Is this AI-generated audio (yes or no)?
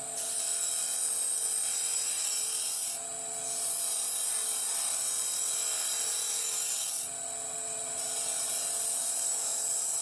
no